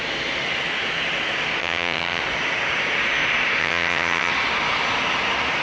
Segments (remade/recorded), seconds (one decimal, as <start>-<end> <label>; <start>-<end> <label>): 0.0-1.6 recorded; 1.6-2.2 remade; 2.2-3.6 recorded; 3.6-4.3 remade; 4.3-5.6 recorded